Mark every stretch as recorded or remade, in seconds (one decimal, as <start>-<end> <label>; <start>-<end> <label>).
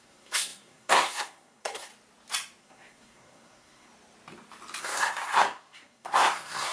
0.0-1.9 remade; 1.9-2.6 recorded; 2.6-3.9 remade; 3.9-4.8 recorded; 4.8-6.7 remade